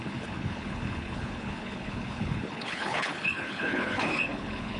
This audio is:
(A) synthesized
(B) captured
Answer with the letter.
A